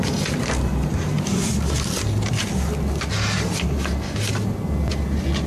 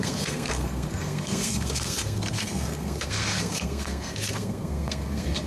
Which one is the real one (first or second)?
first